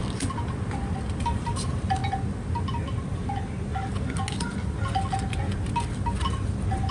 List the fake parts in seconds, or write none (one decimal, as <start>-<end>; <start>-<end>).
1.2-2.0; 2.6-3.7; 6.3-6.9